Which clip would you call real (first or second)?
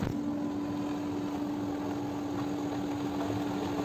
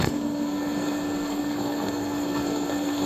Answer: first